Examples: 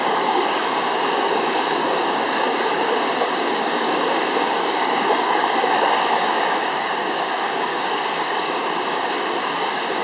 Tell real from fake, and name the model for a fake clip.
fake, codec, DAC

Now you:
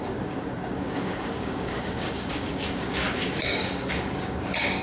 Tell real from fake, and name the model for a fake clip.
fake, codec, DAC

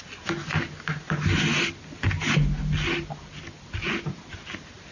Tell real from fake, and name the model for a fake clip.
real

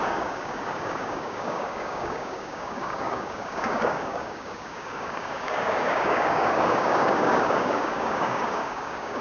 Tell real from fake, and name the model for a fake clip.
fake, codec, DAC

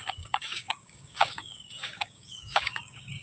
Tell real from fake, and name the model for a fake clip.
fake, codec, DAC